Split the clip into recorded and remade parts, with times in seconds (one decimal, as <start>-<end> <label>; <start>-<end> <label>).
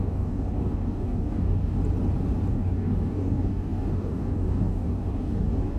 0.0-1.8 remade; 1.8-2.5 recorded; 2.5-5.8 remade